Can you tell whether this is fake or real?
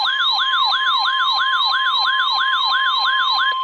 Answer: fake